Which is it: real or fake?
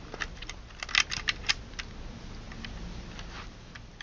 real